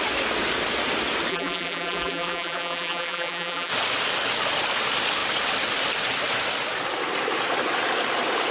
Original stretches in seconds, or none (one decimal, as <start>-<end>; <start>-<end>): 0.0-1.3; 3.7-8.5